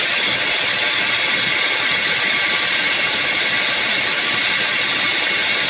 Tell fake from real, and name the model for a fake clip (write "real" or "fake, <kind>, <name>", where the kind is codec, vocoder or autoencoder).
real